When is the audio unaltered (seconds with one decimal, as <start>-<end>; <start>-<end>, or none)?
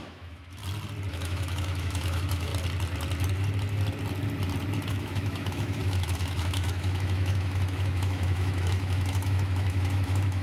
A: 0.6-1.1; 2.5-4.9